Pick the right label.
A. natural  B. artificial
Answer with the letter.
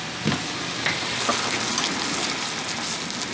A